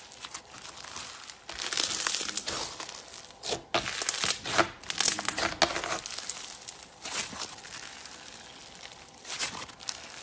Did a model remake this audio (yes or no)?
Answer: no